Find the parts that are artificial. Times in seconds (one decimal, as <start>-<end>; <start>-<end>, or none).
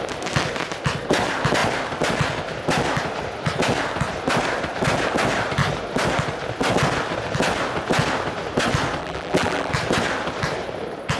9.0-9.7